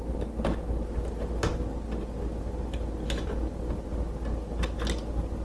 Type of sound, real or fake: real